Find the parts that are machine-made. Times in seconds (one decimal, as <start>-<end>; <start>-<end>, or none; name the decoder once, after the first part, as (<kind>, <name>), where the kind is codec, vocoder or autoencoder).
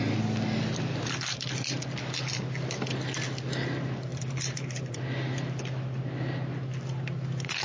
4.1-5.0 (vocoder, BigVGAN v2)